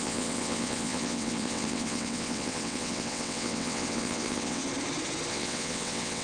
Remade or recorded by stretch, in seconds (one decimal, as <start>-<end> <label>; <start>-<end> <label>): 0.0-4.6 remade; 4.6-5.3 recorded; 5.3-6.2 remade